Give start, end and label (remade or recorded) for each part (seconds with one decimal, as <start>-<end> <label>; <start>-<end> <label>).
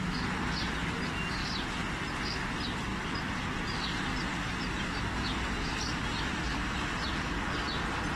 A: 0.0-2.9 recorded; 2.9-6.3 remade; 6.3-8.2 recorded